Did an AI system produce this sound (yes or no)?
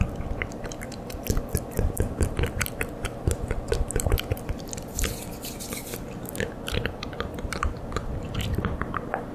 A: no